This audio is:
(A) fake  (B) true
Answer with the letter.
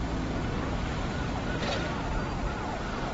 A